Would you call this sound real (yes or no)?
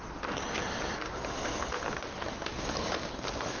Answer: yes